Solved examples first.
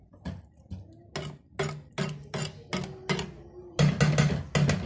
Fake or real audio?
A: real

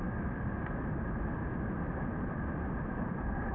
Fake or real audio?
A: real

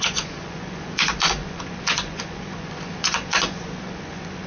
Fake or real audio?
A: fake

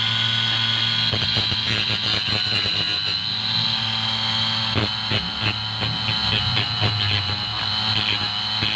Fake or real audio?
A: real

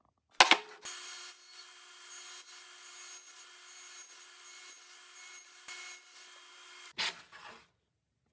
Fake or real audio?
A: real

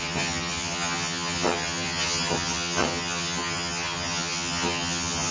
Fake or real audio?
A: fake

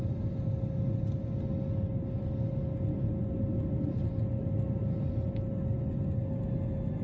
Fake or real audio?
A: real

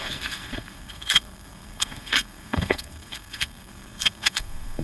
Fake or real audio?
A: fake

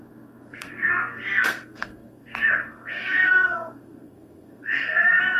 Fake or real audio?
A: fake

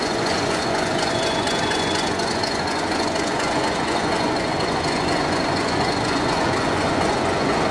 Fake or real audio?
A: fake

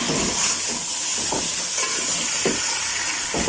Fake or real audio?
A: real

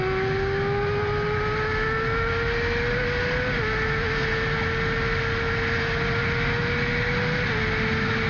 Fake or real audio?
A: real